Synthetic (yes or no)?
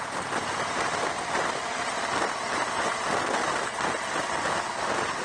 no